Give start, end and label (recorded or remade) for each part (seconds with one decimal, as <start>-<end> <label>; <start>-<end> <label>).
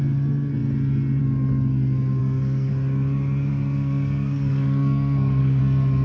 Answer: 0.0-2.2 recorded; 2.2-2.7 remade; 2.7-3.5 recorded; 3.5-5.6 remade; 5.6-6.0 recorded